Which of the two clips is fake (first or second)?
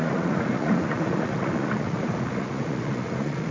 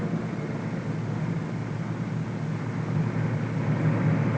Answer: first